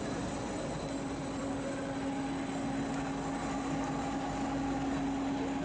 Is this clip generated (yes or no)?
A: no